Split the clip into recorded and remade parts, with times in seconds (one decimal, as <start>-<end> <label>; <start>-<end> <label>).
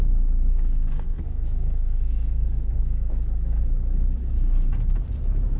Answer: 0.0-0.5 recorded; 0.5-3.1 remade; 3.1-5.6 recorded